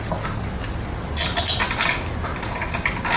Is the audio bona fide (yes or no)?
yes